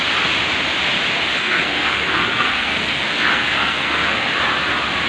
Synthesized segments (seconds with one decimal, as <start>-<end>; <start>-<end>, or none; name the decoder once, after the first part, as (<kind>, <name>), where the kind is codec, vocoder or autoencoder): 1.3-4.4 (codec, SNAC)